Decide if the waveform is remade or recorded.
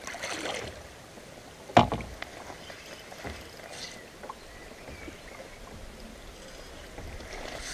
recorded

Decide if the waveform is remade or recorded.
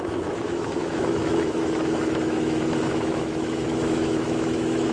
remade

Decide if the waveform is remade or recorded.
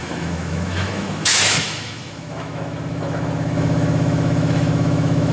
remade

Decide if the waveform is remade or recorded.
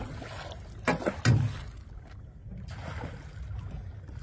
recorded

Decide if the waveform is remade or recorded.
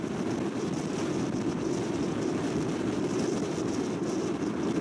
recorded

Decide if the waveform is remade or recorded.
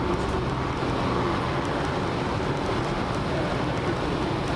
recorded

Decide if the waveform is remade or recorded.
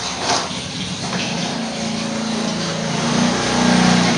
recorded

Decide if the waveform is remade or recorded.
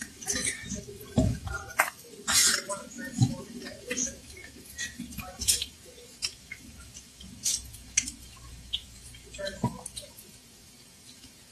remade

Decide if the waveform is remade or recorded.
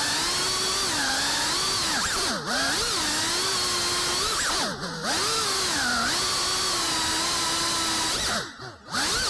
recorded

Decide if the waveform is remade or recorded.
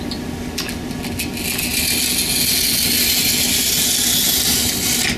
recorded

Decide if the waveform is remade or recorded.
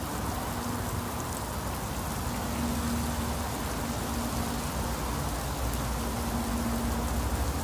recorded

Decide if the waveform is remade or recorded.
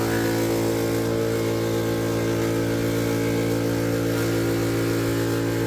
recorded